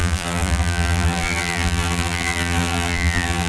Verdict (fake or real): fake